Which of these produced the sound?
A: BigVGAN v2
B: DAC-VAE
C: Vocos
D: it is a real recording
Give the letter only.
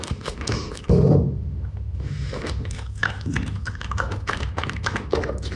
B